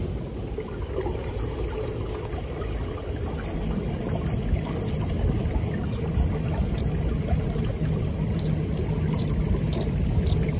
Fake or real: real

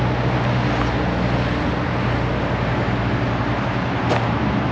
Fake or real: real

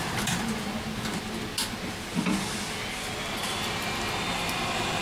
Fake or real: real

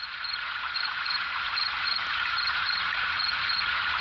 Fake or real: fake